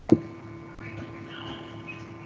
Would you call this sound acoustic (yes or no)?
yes